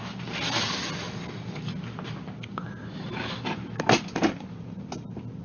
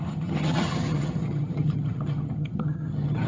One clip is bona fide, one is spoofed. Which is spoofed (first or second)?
second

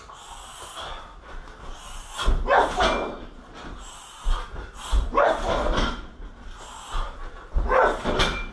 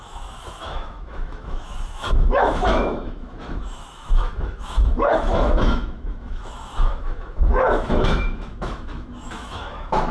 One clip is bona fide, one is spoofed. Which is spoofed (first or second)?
second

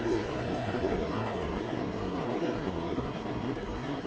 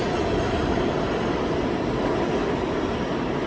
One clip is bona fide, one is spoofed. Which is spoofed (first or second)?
first